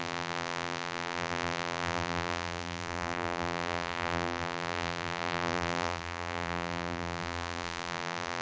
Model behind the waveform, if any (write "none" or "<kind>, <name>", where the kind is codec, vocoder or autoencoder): vocoder, BigVGAN v2